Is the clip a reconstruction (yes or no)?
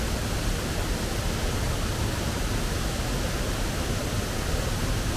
no